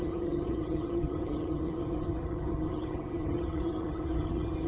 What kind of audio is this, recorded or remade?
remade